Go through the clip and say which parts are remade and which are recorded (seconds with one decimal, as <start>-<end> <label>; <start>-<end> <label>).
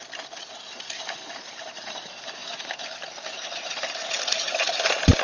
0.0-5.2 recorded